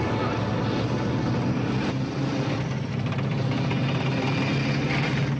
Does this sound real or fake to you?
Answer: real